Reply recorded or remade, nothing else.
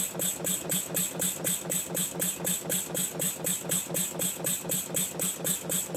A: recorded